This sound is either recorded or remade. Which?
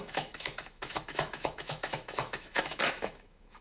remade